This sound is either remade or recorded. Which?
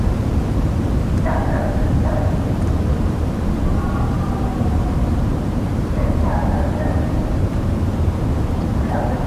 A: remade